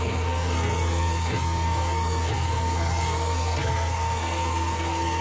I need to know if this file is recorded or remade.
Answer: remade